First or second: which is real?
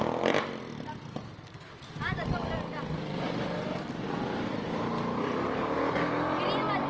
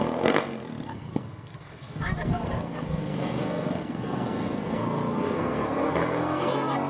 first